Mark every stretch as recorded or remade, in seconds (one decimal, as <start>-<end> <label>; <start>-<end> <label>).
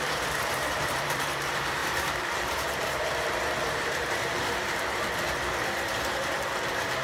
0.0-7.0 remade